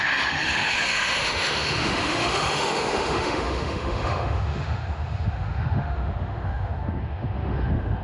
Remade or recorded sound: remade